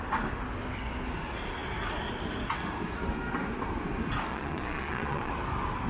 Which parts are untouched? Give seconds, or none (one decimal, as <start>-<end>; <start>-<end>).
0.0-4.3; 5.3-5.9